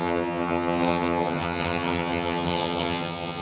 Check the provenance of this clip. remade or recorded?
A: remade